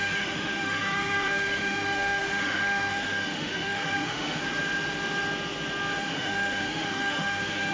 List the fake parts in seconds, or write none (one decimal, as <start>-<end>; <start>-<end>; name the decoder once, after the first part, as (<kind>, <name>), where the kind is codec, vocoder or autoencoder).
0.0-4.4 (autoencoder, DAC-VAE); 6.0-7.7